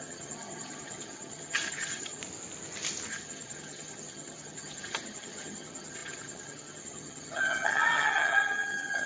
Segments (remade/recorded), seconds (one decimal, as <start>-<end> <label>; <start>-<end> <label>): 0.0-2.2 remade; 2.2-3.1 recorded; 3.1-9.1 remade